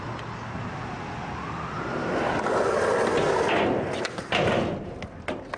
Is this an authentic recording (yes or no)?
yes